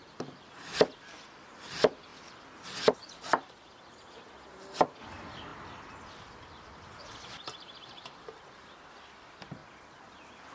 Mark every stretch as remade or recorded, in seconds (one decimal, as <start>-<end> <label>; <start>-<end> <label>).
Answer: 0.0-10.5 recorded